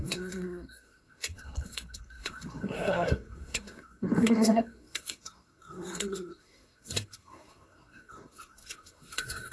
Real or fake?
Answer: fake